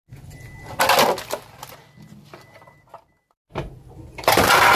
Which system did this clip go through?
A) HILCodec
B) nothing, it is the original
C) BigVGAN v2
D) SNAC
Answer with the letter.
B